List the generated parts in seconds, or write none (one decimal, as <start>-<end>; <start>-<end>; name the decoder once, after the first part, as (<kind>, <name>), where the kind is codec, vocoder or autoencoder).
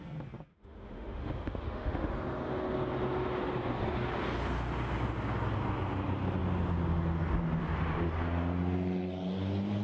0.5-2.1 (autoencoder, DAC-VAE)